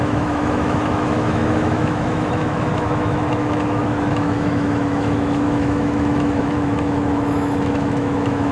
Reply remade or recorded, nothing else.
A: remade